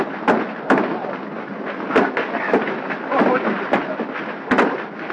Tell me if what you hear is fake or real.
real